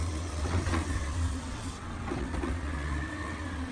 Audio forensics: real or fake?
fake